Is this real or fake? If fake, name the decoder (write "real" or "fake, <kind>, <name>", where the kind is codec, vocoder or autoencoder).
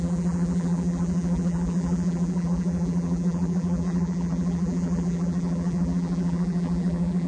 fake, vocoder, BigVGAN v2